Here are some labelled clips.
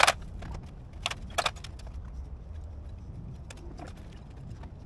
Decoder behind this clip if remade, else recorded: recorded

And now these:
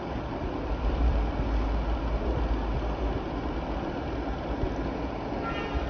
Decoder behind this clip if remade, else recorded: recorded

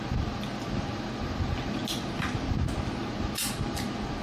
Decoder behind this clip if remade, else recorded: recorded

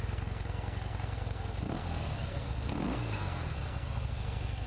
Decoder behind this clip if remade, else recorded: remade, codec, SNAC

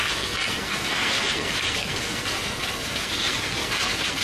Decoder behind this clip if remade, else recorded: remade, codec, SNAC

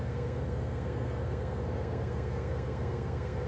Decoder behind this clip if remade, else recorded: remade, codec, SNAC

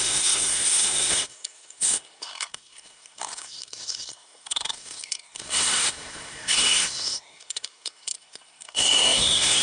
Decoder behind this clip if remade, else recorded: remade, codec, SNAC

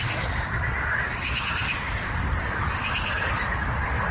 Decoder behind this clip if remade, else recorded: recorded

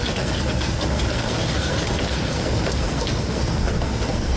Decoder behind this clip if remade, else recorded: remade, codec, SNAC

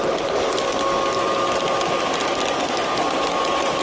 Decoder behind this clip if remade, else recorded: recorded